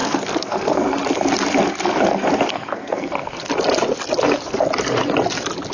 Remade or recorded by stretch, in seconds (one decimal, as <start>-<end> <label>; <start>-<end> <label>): 0.0-1.0 remade; 1.0-2.5 recorded; 2.5-3.5 remade; 3.5-5.7 recorded